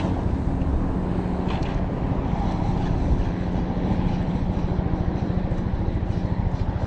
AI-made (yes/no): no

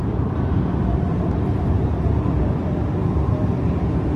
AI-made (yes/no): no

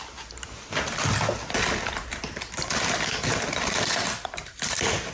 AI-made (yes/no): no